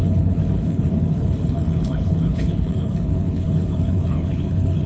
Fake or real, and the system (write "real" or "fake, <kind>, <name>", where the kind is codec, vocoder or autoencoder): fake, codec, HILCodec